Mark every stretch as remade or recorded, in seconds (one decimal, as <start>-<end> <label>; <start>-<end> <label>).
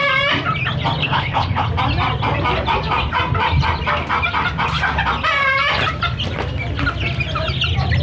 0.0-1.0 recorded; 1.0-1.7 remade; 1.7-8.0 recorded